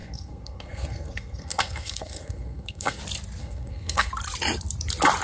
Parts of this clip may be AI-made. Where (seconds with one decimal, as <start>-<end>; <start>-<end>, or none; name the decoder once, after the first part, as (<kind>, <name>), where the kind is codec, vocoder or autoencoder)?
0.0-3.0 (codec, SNAC); 3.4-4.1